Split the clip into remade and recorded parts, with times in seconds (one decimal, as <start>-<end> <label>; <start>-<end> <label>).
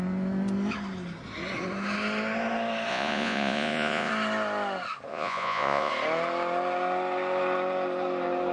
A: 0.0-2.9 recorded; 2.9-4.1 remade; 4.1-5.1 recorded; 5.1-5.9 remade; 5.9-8.5 recorded